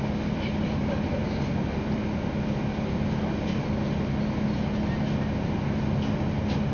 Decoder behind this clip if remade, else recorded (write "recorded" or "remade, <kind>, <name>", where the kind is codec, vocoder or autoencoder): recorded